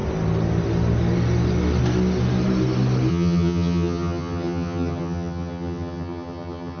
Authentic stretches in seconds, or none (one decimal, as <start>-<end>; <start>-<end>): 0.0-3.1